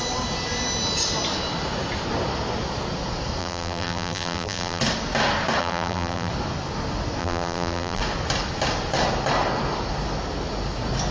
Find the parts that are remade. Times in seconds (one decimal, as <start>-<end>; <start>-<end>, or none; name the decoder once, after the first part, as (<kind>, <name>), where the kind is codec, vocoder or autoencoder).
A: 3.4-4.8 (vocoder, BigVGAN v2); 5.6-6.3; 7.2-8.0

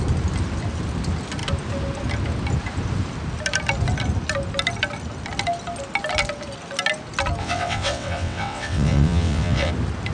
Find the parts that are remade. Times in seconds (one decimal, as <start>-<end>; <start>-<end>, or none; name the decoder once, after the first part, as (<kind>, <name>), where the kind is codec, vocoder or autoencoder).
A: 7.4-9.7 (vocoder, WaveNeXt)

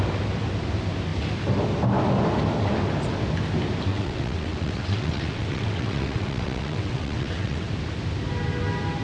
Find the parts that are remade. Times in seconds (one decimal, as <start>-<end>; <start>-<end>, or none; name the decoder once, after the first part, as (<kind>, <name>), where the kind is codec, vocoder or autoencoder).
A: 3.9-7.7 (vocoder, WaveNeXt)

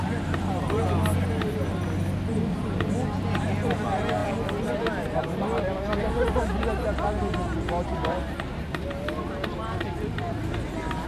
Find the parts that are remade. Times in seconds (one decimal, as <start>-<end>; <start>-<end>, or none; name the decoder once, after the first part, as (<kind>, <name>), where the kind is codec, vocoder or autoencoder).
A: none

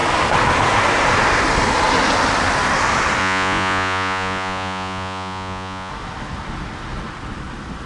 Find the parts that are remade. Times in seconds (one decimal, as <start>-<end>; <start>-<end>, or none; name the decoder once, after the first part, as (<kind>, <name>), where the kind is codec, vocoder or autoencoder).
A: 3.2-5.9 (vocoder, Vocos)